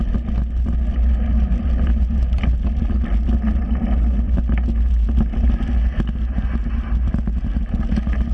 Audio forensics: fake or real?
real